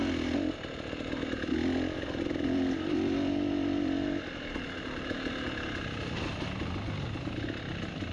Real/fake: real